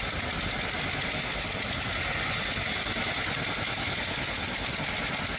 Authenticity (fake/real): real